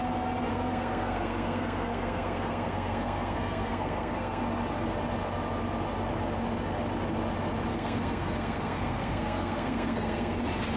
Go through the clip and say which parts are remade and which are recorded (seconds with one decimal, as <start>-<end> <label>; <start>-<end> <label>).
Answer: 0.0-0.5 recorded; 0.5-4.4 remade; 4.4-7.7 recorded; 7.7-10.4 remade; 10.4-10.8 recorded